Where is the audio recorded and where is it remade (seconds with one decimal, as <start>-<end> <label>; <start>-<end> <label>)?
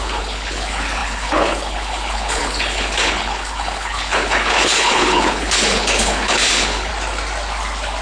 0.0-6.9 remade; 6.9-8.0 recorded